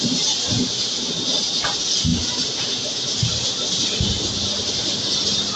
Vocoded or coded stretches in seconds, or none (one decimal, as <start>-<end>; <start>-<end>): none